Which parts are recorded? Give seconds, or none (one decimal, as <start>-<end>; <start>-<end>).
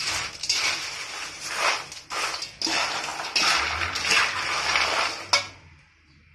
0.0-6.3